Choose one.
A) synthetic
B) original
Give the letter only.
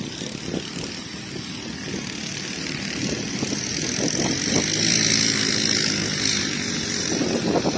B